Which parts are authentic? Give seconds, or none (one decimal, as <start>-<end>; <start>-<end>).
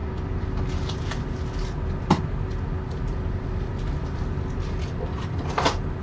0.0-6.0